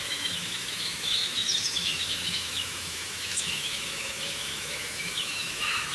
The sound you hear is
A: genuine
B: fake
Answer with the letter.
B